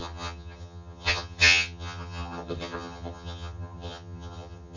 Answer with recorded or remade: remade